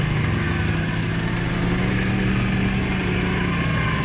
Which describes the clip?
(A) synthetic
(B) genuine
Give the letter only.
B